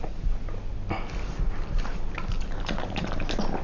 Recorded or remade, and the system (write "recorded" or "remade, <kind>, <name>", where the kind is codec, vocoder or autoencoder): recorded